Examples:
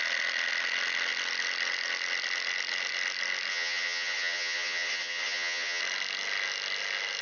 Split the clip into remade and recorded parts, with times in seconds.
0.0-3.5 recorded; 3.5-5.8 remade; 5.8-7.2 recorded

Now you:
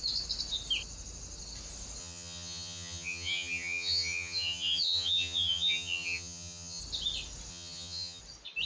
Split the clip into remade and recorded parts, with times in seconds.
0.0-2.0 recorded; 2.0-6.8 remade; 6.8-7.5 recorded; 7.5-8.2 remade; 8.2-8.7 recorded

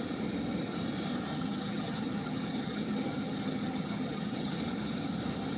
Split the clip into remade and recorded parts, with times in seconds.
0.0-1.3 recorded; 1.3-4.6 remade; 4.6-5.6 recorded

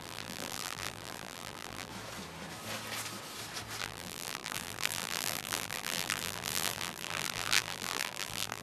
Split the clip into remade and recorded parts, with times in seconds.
0.0-1.9 remade; 1.9-3.8 recorded; 3.8-8.6 remade